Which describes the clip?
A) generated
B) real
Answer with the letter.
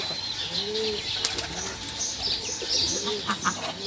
B